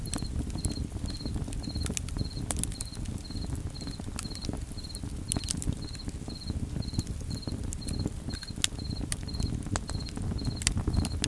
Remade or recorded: recorded